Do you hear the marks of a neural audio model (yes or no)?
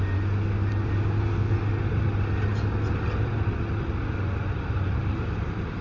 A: no